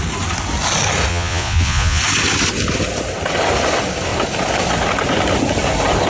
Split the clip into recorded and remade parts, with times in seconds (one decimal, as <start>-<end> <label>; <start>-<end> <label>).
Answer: 0.0-1.1 recorded; 1.1-2.0 remade; 2.0-6.1 recorded